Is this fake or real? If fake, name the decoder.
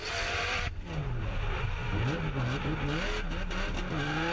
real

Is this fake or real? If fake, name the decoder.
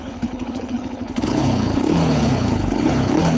fake, codec, HILCodec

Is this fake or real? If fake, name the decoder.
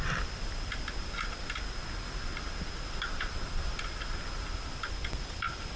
real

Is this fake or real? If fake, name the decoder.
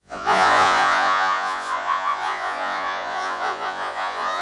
fake, vocoder, Vocos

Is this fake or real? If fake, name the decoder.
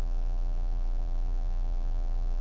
fake, vocoder, BigVGAN v2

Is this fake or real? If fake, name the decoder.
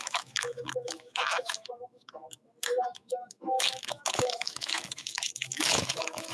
fake, autoencoder, DAC-VAE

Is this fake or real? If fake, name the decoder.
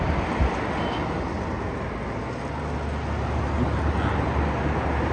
real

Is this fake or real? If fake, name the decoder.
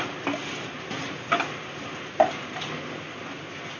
real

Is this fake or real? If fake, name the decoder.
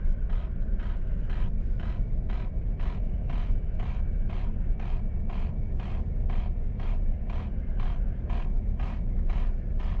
real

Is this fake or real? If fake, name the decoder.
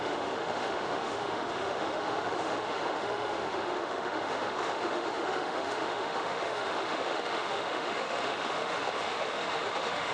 fake, autoencoder, DAC-VAE